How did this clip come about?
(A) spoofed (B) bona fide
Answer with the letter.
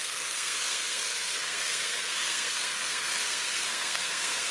A